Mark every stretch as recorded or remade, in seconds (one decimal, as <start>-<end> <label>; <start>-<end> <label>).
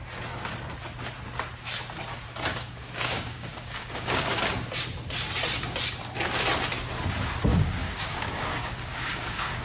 0.0-2.5 recorded; 2.5-4.3 remade; 4.3-7.5 recorded; 7.5-9.6 remade